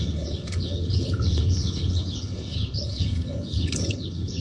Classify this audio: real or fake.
fake